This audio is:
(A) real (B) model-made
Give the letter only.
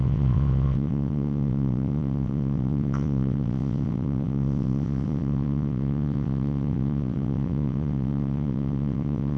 B